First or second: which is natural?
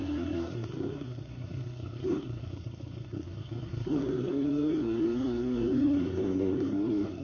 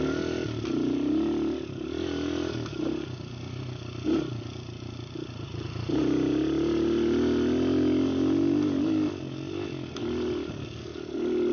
second